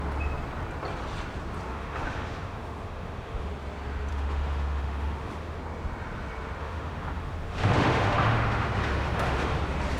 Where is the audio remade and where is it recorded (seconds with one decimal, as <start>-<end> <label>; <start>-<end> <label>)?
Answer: 0.0-1.7 recorded; 1.7-3.5 remade; 3.5-4.1 recorded; 4.1-5.6 remade; 5.6-6.6 recorded; 6.6-9.6 remade; 9.6-10.0 recorded